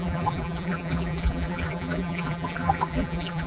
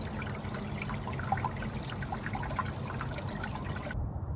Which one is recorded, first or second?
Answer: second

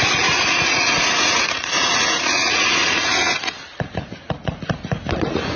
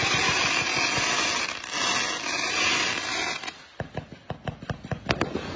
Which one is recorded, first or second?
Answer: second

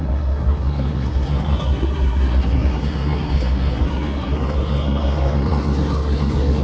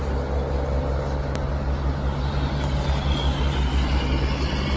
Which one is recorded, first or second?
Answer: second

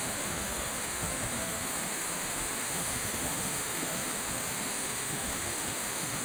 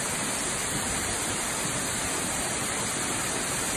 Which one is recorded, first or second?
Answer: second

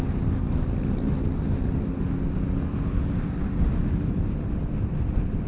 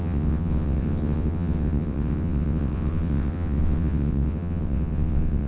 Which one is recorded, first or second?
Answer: first